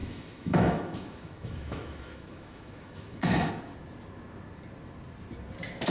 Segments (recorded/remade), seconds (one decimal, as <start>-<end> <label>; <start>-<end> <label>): 0.0-3.5 remade; 3.5-5.9 recorded